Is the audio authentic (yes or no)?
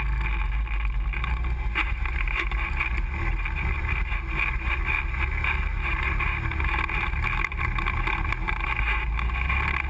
yes